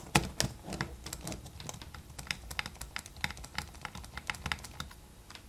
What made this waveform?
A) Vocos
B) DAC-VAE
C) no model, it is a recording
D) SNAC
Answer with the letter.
C